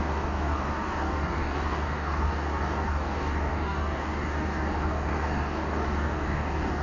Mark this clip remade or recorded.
remade